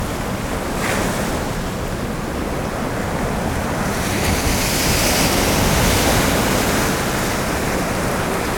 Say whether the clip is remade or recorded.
recorded